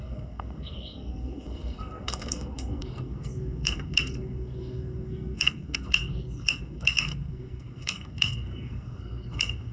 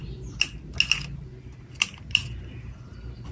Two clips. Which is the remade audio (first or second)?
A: first